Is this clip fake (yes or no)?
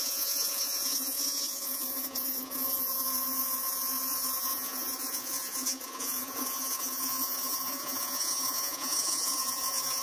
yes